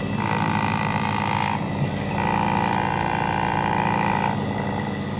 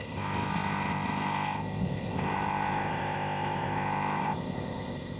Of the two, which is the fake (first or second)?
second